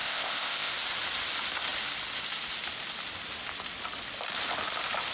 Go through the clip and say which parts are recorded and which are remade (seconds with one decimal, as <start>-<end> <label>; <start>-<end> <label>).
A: 0.0-0.7 remade; 0.7-5.1 recorded